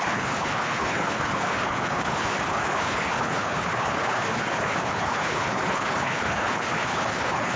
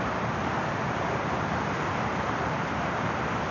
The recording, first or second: second